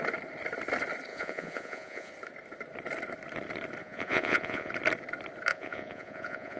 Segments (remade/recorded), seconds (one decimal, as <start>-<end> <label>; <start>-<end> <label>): 0.0-1.1 recorded; 1.1-2.1 remade; 2.1-3.8 recorded; 3.8-4.7 remade; 4.7-5.5 recorded; 5.5-6.6 remade